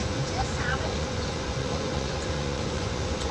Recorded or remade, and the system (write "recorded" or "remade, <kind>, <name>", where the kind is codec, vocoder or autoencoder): remade, vocoder, Vocos